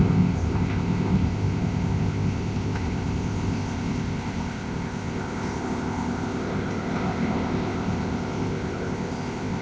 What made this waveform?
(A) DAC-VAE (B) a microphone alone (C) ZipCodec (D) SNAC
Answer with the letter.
C